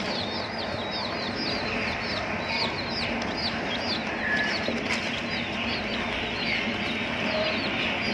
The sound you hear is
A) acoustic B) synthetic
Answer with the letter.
A